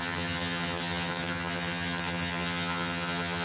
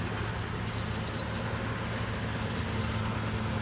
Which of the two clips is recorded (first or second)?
second